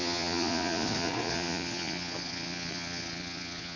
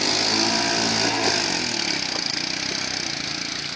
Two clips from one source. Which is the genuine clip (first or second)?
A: second